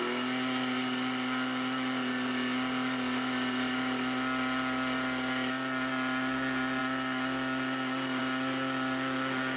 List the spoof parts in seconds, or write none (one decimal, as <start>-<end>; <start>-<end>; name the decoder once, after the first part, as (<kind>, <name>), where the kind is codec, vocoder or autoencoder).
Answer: none